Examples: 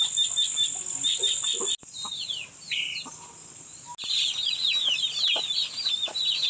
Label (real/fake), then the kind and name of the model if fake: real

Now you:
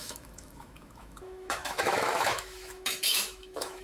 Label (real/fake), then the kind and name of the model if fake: fake, autoencoder, DAC-VAE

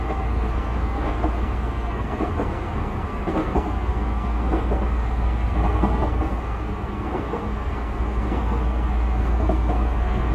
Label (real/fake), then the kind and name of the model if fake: fake, codec, SNAC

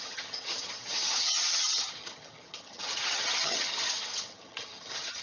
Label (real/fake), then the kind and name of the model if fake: fake, vocoder, HiFi-GAN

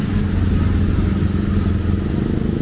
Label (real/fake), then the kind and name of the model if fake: real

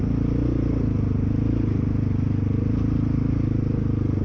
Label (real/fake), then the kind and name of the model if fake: real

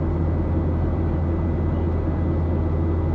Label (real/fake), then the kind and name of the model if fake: real